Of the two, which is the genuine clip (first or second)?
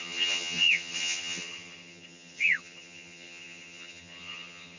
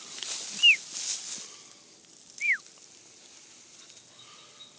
second